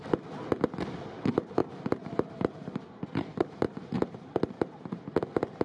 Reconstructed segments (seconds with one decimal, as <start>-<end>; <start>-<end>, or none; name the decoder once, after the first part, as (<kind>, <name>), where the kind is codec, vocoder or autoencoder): 1.6-5.0 (vocoder, BigVGAN v2)